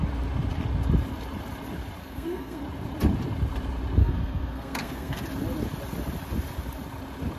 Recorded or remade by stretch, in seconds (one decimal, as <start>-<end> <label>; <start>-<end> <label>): 0.0-2.0 recorded; 2.0-2.6 remade; 2.6-4.0 recorded; 4.0-5.2 remade; 5.2-7.4 recorded

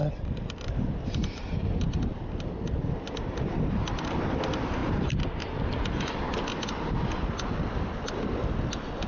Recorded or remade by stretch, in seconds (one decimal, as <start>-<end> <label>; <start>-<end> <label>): 0.0-9.1 recorded

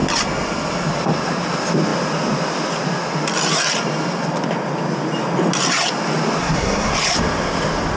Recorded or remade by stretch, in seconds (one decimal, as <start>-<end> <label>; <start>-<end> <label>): 0.0-6.4 recorded; 6.4-6.9 remade; 6.9-8.0 recorded